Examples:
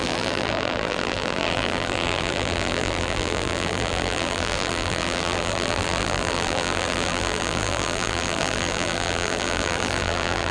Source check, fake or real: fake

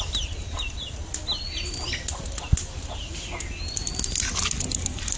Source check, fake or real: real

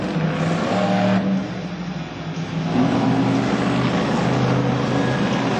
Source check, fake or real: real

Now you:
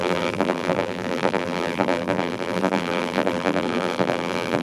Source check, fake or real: fake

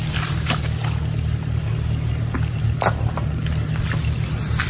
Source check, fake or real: real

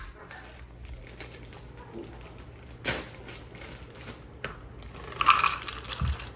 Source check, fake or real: real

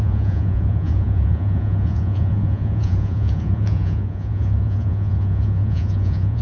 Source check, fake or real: fake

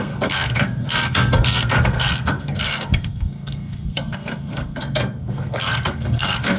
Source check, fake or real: fake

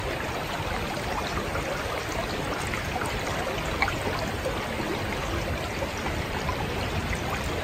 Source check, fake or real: real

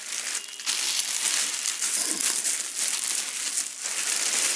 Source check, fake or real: real